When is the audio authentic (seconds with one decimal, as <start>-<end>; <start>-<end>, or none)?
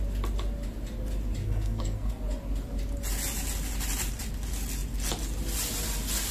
0.0-1.4; 2.1-6.3